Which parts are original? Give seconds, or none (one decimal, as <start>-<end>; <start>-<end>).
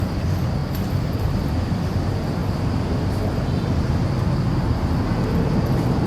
2.4-6.1